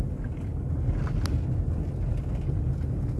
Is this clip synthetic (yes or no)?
no